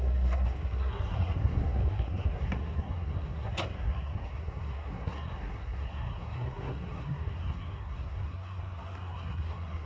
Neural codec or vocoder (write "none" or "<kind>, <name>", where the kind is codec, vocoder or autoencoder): codec, SNAC